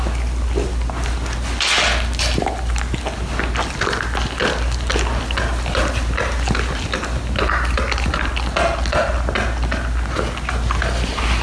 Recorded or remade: recorded